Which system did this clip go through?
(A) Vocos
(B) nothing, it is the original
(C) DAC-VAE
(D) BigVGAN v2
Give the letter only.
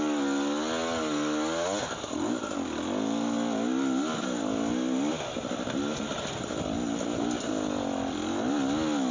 B